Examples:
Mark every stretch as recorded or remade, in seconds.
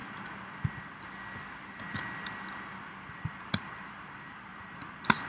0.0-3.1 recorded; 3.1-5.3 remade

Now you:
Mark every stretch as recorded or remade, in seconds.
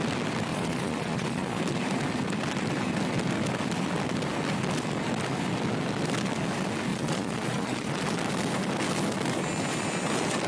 0.0-0.5 recorded; 0.5-1.6 remade; 1.6-6.9 recorded; 6.9-8.0 remade; 8.0-10.5 recorded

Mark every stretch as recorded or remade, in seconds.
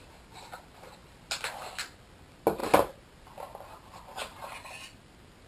0.0-5.5 recorded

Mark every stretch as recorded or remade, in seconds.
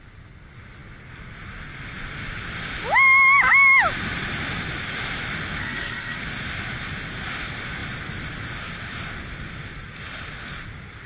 0.0-5.6 recorded; 5.6-6.2 remade; 6.2-11.1 recorded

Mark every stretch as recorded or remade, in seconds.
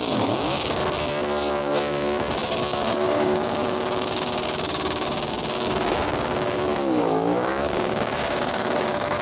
0.0-0.8 remade; 0.8-1.5 recorded; 1.5-9.2 remade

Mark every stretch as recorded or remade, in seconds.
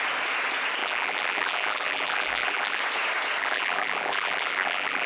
0.0-0.8 recorded; 0.8-2.8 remade; 2.8-3.4 recorded; 3.4-5.1 remade